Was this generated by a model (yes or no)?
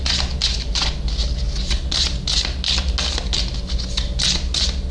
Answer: no